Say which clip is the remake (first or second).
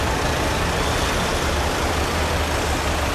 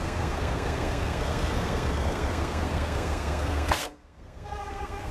second